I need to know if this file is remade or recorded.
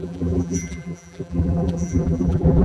remade